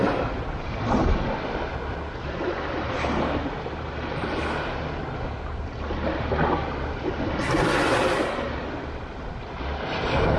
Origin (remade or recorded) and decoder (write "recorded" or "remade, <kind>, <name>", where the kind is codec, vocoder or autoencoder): recorded